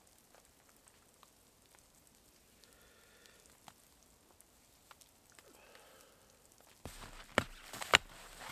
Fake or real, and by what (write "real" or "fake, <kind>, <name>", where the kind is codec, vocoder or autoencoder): real